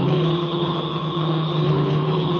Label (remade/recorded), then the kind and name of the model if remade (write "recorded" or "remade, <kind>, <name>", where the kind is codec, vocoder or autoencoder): remade, codec, HILCodec